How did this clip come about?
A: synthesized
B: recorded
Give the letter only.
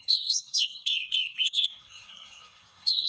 A